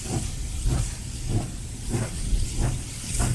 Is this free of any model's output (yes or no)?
yes